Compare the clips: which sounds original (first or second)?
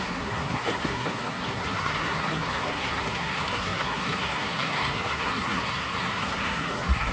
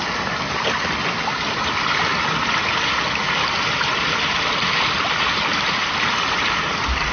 second